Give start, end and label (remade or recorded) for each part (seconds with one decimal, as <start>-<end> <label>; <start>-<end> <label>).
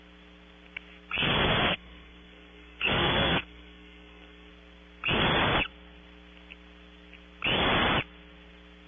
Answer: 0.0-1.6 recorded; 1.6-4.5 remade; 4.5-8.9 recorded